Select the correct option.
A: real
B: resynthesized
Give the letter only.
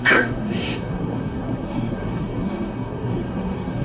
B